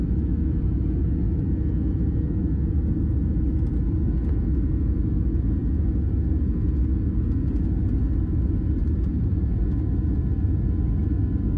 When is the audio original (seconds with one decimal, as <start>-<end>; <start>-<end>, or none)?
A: 0.0-8.8; 9.6-11.6